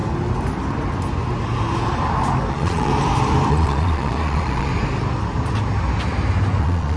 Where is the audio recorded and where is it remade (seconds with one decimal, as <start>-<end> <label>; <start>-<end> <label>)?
0.0-2.5 recorded; 2.5-2.9 remade; 2.9-3.5 recorded; 3.5-4.7 remade; 4.7-6.6 recorded; 6.6-7.0 remade

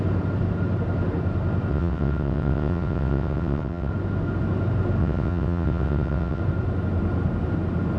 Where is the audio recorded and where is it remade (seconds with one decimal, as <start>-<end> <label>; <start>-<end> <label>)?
0.0-1.7 recorded; 1.7-3.9 remade; 3.9-5.0 recorded; 5.0-6.4 remade; 6.4-8.0 recorded

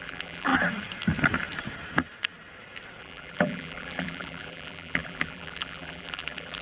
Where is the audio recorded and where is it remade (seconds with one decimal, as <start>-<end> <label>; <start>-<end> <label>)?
0.0-0.5 remade; 0.5-3.0 recorded; 3.0-6.6 remade